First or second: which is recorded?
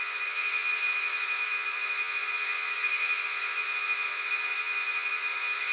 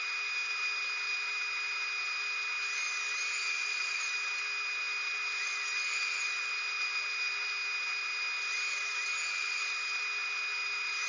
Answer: second